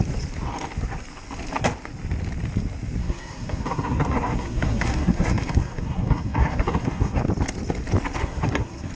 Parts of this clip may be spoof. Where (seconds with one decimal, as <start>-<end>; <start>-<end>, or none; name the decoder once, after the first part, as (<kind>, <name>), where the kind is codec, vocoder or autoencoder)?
3.0-7.2 (codec, SNAC); 8.2-8.9